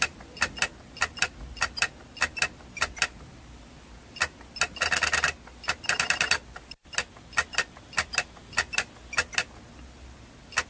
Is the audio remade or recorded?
recorded